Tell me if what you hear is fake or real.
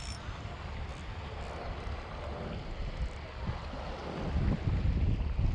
real